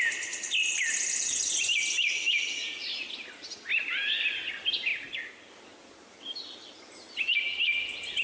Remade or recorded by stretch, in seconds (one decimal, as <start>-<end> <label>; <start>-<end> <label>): 0.0-8.2 recorded